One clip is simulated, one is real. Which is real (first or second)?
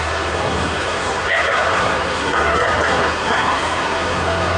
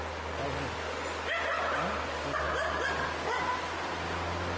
second